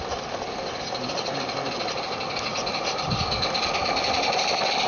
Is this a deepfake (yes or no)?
no